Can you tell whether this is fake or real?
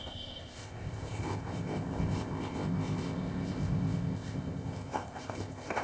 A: fake